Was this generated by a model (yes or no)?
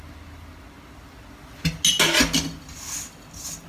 no